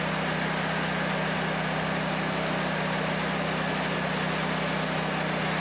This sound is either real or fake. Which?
real